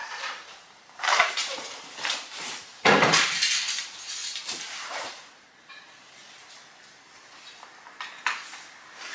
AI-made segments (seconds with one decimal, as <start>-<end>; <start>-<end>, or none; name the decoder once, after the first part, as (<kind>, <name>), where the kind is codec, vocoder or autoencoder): 0.0-1.8 (vocoder, BigVGAN v2); 4.2-5.7